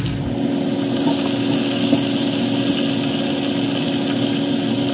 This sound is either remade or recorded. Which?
recorded